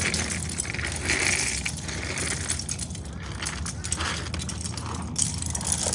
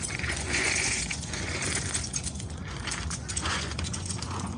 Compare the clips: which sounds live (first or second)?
first